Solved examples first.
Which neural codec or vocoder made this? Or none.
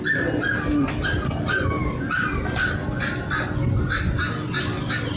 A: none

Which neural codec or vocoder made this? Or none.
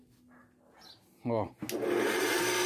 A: none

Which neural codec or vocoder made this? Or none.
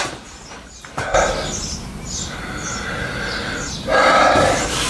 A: vocoder, BigVGAN v2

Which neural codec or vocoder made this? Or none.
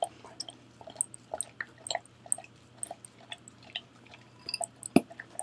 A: none